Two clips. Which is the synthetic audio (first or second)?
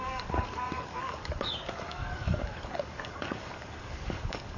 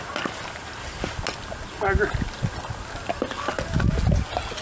first